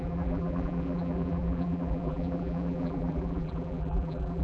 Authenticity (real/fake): fake